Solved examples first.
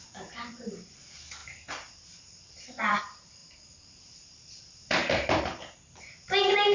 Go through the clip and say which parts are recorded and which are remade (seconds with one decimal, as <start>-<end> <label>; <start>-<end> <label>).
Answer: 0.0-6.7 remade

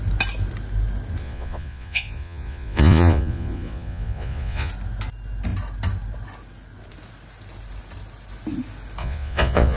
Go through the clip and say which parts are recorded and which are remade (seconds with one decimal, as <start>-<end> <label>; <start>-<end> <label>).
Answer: 0.0-1.2 recorded; 1.2-4.7 remade; 4.7-9.0 recorded; 9.0-9.8 remade

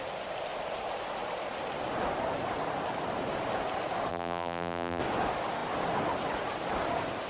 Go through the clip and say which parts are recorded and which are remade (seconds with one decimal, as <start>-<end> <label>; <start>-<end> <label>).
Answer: 0.0-4.1 recorded; 4.1-5.0 remade; 5.0-7.3 recorded